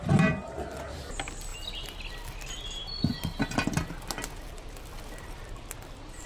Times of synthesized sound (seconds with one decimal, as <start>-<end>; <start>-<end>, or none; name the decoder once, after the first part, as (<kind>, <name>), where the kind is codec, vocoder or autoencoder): none